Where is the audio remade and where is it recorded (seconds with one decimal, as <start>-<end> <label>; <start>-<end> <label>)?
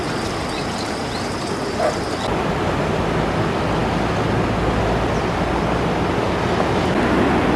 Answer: 0.0-7.6 recorded